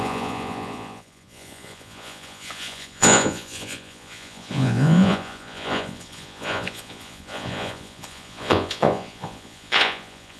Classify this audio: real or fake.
fake